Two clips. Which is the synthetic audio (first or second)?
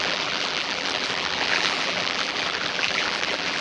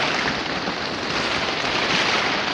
first